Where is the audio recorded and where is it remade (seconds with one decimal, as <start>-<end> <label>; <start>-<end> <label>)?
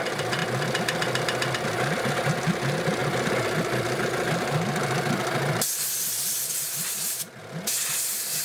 0.0-8.4 recorded